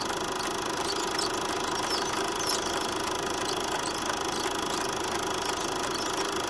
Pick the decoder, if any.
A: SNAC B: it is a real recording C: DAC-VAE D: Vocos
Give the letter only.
B